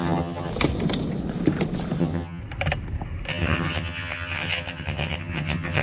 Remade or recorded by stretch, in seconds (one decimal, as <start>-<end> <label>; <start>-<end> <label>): 0.0-0.5 remade; 0.5-2.0 recorded; 2.0-2.4 remade; 2.4-3.3 recorded; 3.3-5.8 remade